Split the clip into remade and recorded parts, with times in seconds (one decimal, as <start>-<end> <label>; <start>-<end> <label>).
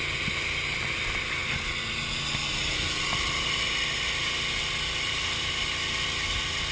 0.0-6.7 recorded